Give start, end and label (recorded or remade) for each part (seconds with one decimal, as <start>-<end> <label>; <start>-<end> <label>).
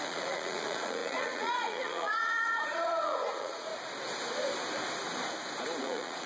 0.0-3.7 remade; 3.7-5.8 recorded; 5.8-6.3 remade